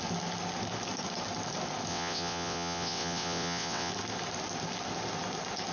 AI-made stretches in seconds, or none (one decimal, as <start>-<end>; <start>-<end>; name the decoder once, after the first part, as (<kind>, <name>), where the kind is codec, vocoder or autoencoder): 1.9-3.9 (vocoder, WaveNeXt)